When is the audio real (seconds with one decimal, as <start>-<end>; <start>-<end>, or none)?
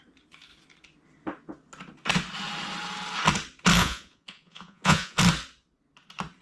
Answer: 0.0-3.8; 5.2-6.4